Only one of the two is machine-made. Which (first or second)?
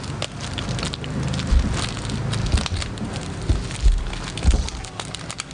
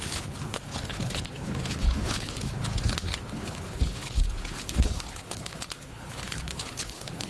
second